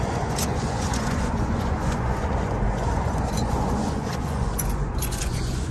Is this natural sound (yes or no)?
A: no